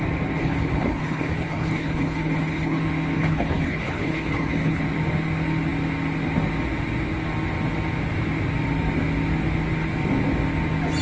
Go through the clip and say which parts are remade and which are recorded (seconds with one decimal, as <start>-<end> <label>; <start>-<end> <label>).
0.0-0.4 recorded; 0.4-2.8 remade; 2.8-3.2 recorded; 3.2-4.8 remade; 4.8-11.0 recorded